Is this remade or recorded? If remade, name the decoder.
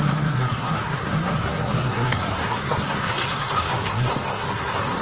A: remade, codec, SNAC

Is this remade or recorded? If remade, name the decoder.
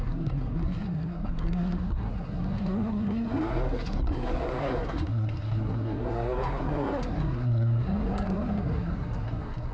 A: remade, codec, SNAC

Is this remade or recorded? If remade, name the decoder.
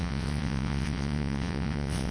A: remade, vocoder, WaveNeXt